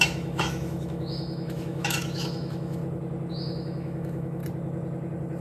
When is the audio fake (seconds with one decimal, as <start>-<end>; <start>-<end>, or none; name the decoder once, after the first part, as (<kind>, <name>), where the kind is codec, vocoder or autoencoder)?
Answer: 0.0-2.8 (autoencoder, DAC-VAE); 3.3-4.4